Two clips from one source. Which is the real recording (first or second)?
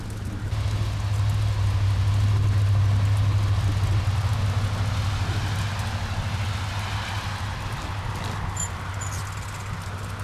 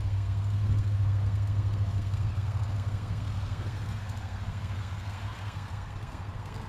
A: first